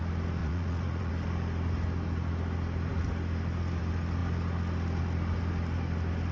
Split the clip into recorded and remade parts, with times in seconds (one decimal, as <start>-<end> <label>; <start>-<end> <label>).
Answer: 0.0-0.4 recorded; 0.4-1.1 remade; 1.1-6.3 recorded